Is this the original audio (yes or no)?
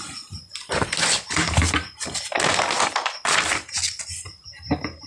yes